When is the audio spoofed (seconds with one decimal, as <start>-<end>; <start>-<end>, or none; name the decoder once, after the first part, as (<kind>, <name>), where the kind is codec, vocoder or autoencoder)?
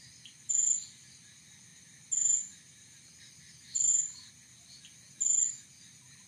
none